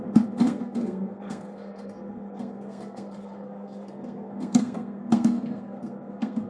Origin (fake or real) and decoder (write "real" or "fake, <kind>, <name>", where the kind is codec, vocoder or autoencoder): fake, codec, SNAC